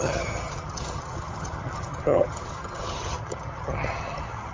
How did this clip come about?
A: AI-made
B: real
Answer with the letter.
A